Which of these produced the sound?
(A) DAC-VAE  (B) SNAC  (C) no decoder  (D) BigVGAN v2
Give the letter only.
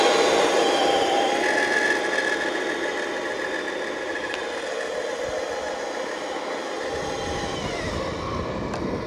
C